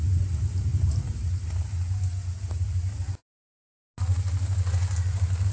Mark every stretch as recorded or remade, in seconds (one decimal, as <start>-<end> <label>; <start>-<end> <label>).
0.0-5.5 recorded